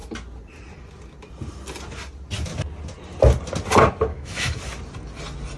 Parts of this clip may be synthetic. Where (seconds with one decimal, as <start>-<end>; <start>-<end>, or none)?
4.1-4.6